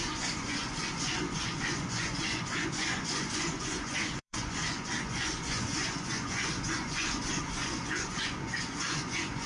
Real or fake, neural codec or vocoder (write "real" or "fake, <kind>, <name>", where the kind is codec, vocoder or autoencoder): fake, vocoder, Vocos